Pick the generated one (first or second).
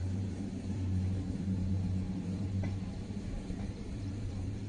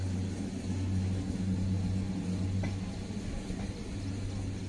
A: first